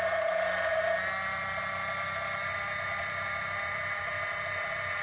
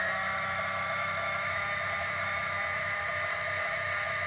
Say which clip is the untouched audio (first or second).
first